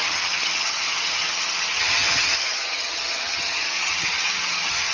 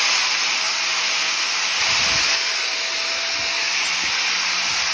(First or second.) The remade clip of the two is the first